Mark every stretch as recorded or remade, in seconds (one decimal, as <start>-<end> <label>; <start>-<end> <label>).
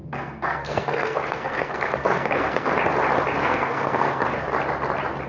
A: 0.0-2.7 remade; 2.7-3.4 recorded; 3.4-4.4 remade; 4.4-5.3 recorded